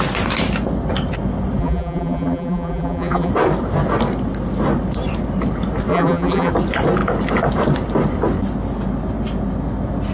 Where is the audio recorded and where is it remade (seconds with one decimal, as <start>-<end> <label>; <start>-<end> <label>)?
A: 0.0-1.6 recorded; 1.6-3.3 remade; 3.3-5.9 recorded; 5.9-6.5 remade; 6.5-10.1 recorded